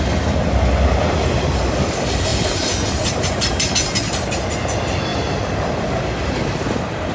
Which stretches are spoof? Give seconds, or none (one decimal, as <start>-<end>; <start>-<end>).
2.3-3.7; 5.1-7.1